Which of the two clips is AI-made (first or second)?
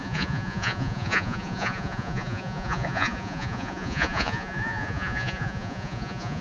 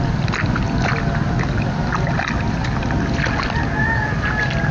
first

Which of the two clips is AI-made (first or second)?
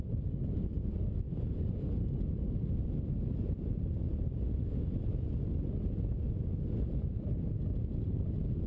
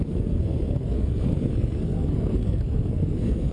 second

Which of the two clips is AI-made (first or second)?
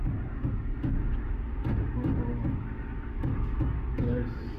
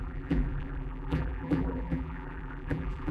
second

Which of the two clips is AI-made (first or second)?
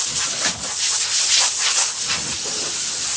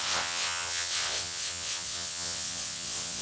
second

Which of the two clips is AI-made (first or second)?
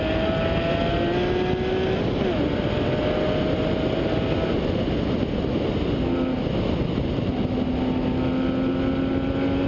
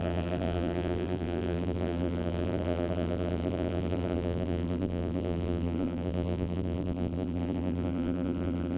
second